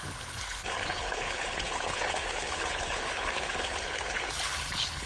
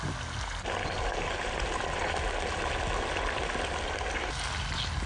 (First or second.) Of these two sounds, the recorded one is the second